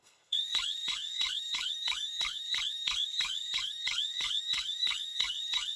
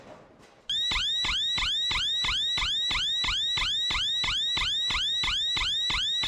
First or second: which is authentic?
second